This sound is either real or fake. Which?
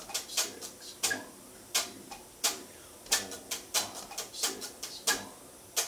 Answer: real